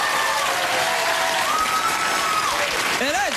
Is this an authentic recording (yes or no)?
yes